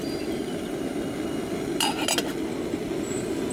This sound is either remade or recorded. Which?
recorded